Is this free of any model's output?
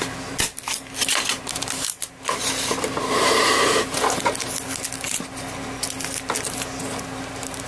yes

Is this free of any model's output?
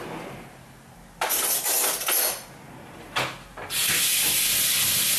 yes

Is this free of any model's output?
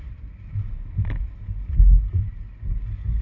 yes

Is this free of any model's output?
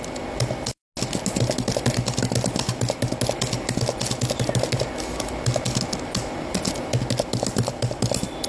yes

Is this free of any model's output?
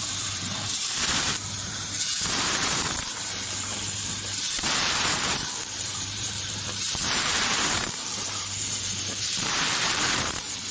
no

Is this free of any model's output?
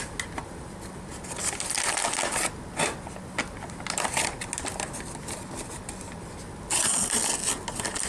yes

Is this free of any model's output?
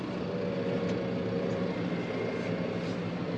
yes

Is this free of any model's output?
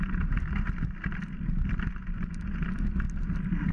yes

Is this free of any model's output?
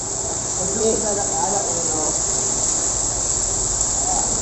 yes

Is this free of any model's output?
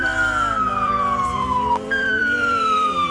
no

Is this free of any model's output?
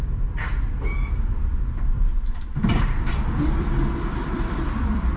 no